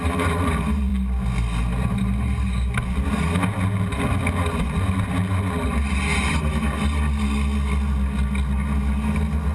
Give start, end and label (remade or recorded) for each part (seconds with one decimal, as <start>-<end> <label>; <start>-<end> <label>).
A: 0.0-9.5 recorded